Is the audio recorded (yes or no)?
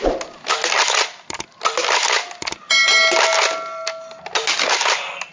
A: yes